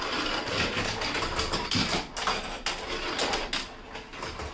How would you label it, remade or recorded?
recorded